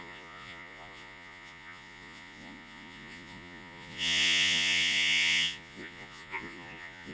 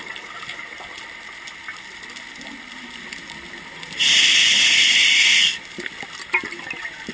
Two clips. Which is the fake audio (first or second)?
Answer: first